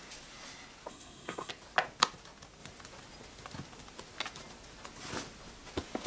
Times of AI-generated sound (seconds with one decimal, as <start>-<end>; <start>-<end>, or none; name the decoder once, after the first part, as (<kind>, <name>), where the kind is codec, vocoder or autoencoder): 0.9-1.5 (codec, SNAC)